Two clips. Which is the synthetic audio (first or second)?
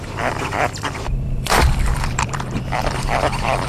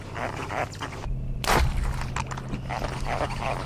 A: first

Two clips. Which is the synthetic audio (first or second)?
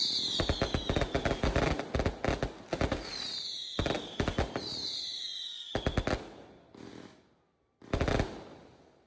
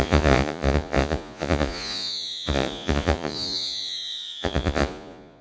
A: second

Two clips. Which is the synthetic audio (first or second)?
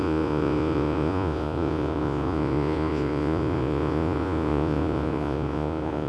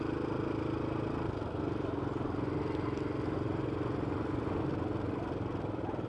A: first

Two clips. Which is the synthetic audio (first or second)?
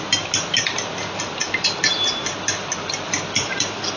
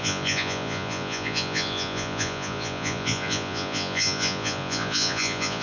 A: second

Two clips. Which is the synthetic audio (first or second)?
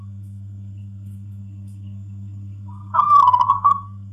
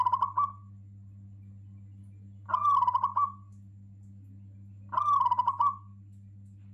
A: first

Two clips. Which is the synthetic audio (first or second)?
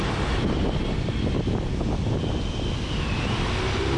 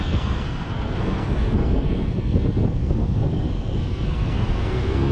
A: second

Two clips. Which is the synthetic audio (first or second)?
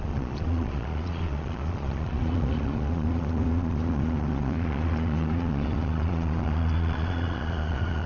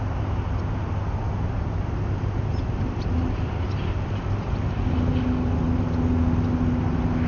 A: first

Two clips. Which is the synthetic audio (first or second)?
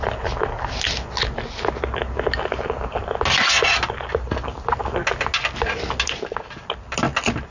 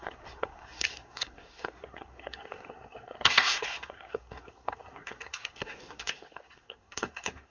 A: second